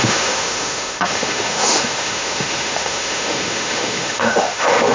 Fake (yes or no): yes